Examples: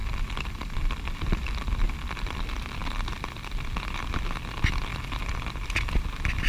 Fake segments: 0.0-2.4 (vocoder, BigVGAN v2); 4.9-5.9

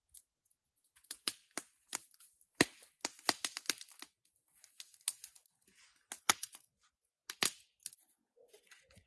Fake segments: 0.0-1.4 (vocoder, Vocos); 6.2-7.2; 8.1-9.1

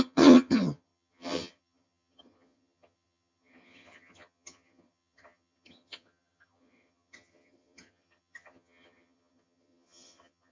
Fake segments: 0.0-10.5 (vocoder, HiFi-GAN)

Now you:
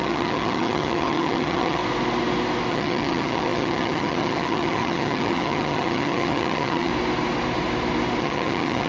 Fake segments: 0.0-1.8 (vocoder, HiFi-GAN); 2.7-6.9; 8.2-8.9

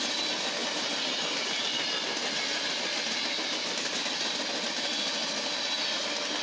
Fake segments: none

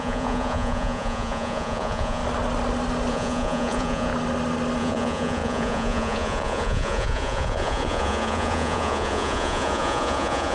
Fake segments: 0.0-2.2 (vocoder, Vocos); 3.1-4.1; 4.8-10.5

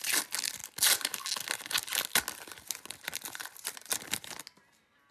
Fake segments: none

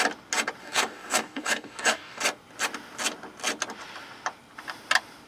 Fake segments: 0.6-2.2 (codec, DAC)